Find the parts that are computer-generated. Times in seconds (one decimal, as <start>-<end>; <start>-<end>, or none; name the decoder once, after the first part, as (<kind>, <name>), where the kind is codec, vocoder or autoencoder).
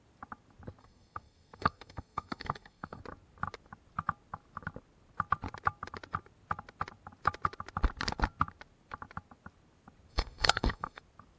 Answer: 0.8-3.0 (codec, SNAC); 10.1-11.0